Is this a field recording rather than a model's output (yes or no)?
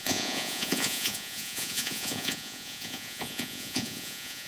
no